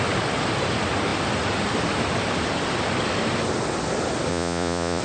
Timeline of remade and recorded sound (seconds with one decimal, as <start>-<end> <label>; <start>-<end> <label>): 0.0-4.3 recorded; 4.3-5.0 remade